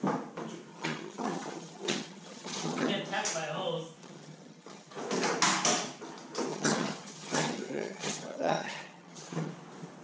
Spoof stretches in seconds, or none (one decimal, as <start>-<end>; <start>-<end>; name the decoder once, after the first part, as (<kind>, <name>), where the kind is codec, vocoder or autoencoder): 0.7-2.9 (vocoder, HiFi-GAN); 4.0-4.9; 6.5-9.5